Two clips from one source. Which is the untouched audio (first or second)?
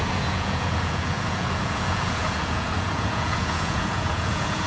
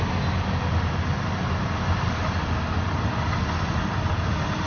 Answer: second